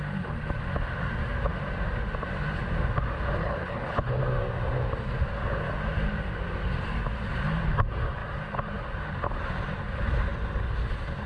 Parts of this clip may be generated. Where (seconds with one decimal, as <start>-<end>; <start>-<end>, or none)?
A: 3.4-4.2